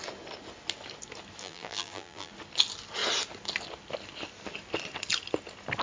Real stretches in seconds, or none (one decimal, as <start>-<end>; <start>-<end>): 0.0-1.4; 2.3-5.8